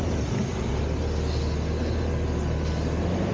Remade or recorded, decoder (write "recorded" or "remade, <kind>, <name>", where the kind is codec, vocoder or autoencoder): recorded